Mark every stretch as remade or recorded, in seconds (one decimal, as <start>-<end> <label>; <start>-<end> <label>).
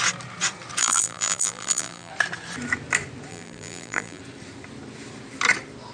0.0-0.8 recorded; 0.8-2.1 remade; 2.1-3.3 recorded; 3.3-4.2 remade; 4.2-5.9 recorded